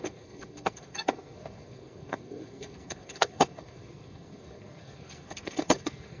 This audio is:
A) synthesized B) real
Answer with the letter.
A